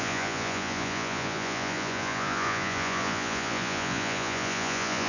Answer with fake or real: fake